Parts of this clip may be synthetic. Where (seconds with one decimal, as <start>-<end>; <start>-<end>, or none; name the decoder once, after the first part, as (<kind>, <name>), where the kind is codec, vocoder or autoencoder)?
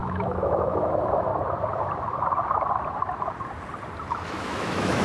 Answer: 0.0-1.3 (autoencoder, DAC-VAE); 4.3-5.0